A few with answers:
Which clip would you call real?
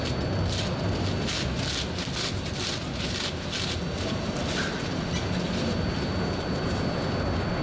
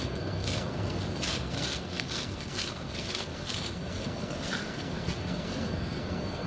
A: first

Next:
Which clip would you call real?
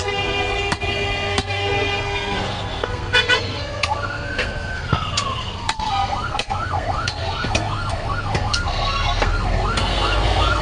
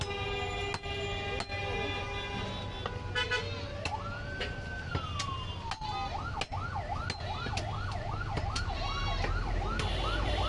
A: second